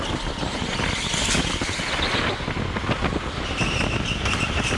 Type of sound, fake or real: real